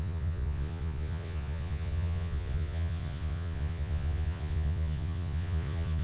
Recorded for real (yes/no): no